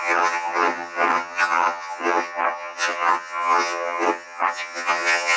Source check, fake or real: fake